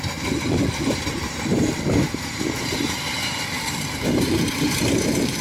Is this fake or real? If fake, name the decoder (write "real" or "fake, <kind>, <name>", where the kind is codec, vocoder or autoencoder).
fake, vocoder, BigVGAN v2